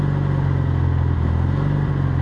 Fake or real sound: real